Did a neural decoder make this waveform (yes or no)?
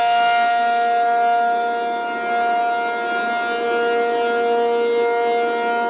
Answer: no